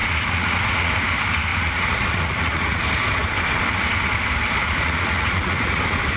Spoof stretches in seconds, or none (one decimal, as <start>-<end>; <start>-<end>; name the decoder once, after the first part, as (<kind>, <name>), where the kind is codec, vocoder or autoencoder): 0.0-0.9 (vocoder, Vocos); 1.5-2.8; 4.6-5.8